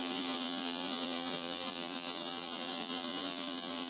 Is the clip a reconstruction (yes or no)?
yes